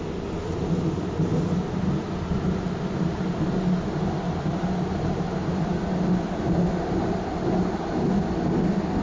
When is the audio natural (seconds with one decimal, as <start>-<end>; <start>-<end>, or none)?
0.0-9.0